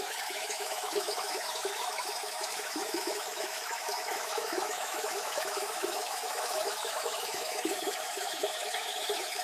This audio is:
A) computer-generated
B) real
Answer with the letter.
A